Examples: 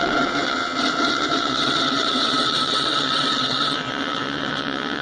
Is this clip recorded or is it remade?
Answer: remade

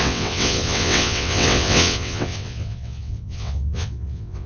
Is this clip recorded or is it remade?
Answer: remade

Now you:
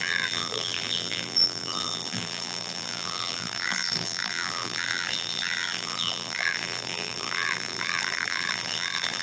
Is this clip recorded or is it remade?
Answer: remade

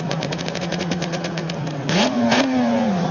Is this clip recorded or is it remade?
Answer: remade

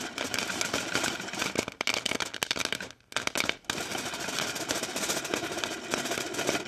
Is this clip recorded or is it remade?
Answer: recorded